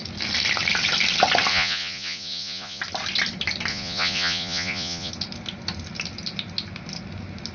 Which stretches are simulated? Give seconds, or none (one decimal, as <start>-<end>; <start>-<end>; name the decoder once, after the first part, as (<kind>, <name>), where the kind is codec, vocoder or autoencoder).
1.5-2.8 (vocoder, Vocos); 3.7-5.1